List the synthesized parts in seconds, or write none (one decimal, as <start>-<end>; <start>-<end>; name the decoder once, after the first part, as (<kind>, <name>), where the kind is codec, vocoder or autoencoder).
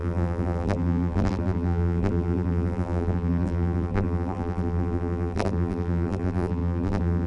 0.0-7.3 (vocoder, BigVGAN v2)